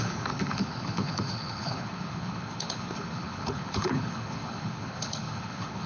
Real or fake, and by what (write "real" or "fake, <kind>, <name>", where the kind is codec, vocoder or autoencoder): fake, codec, HILCodec